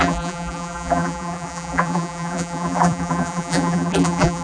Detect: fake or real fake